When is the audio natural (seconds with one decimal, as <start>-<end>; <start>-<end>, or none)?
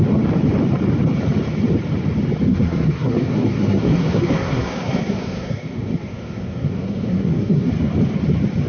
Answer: 0.0-2.5; 7.7-8.7